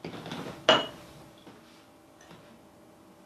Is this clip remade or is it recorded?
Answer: recorded